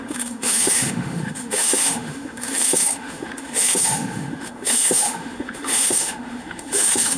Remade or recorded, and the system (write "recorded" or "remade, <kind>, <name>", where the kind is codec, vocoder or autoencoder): remade, autoencoder, DAC-VAE